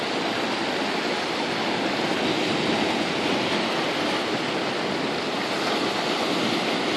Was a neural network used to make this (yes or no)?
no